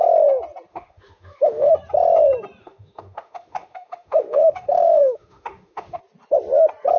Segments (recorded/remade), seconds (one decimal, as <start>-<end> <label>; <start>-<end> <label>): 0.0-0.7 recorded; 0.7-1.7 remade; 1.7-2.6 recorded; 2.6-6.0 remade; 6.0-7.0 recorded